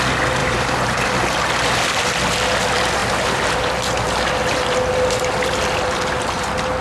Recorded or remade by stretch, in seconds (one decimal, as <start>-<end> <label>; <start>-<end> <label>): 0.0-0.4 recorded; 0.4-1.1 remade; 1.1-6.8 recorded